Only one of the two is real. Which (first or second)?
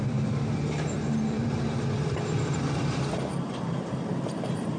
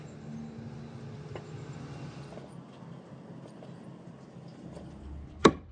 second